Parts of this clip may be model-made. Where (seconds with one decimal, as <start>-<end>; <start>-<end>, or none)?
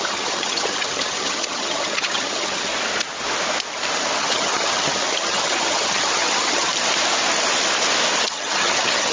0.0-2.7; 4.2-6.7; 8.2-9.1